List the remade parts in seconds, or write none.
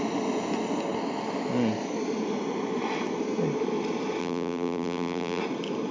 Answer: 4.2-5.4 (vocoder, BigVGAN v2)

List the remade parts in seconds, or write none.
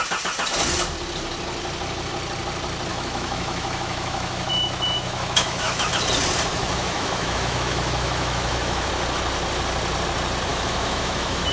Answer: 2.9-5.9 (autoencoder, DAC-VAE); 6.5-8.9; 10.5-11.5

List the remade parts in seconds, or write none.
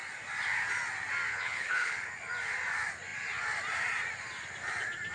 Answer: 1.3-2.1 (codec, HILCodec)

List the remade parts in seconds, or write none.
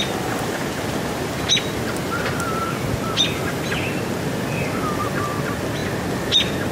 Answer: none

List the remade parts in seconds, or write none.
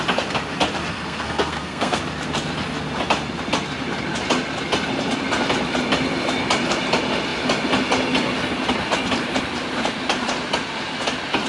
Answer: 0.9-2.0 (codec, SNAC)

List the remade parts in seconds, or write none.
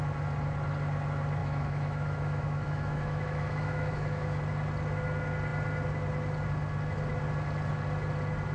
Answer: 1.4-4.4 (autoencoder, DAC-VAE)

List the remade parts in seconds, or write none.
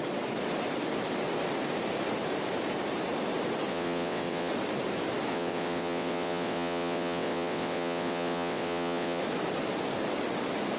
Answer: 3.7-4.5 (vocoder, WaveNeXt); 5.3-9.2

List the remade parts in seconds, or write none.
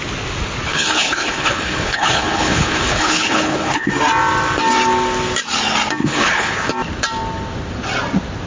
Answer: 0.7-3.9 (codec, HILCodec); 6.0-6.7